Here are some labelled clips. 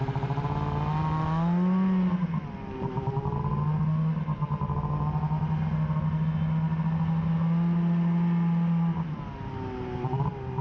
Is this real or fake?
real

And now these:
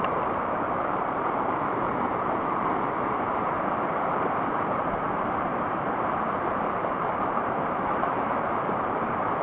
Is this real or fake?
fake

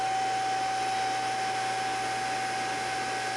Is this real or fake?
real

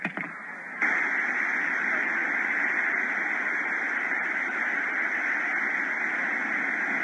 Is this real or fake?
real